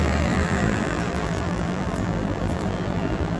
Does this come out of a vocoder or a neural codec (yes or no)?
yes